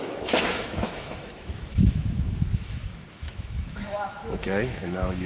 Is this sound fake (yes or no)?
yes